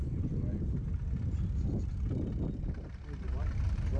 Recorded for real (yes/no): yes